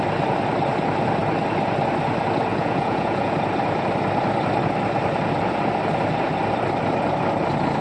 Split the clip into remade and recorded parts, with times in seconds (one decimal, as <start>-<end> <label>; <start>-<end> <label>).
0.0-2.5 recorded; 2.5-3.3 remade; 3.3-7.8 recorded